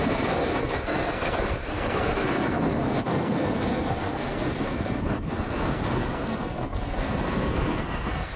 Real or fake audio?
fake